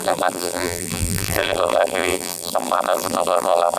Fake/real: fake